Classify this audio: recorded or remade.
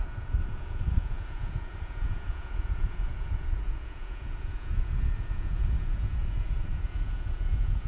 remade